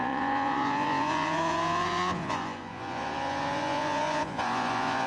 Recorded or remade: remade